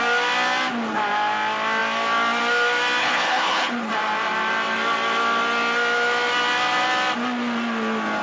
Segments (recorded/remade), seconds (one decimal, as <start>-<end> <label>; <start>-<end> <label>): 0.0-3.0 recorded; 3.0-3.9 remade; 3.9-8.2 recorded